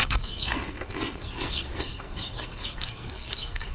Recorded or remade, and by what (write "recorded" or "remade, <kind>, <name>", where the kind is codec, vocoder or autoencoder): remade, codec, SNAC